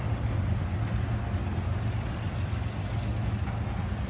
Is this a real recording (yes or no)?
yes